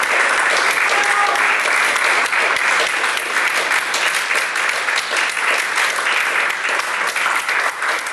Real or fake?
real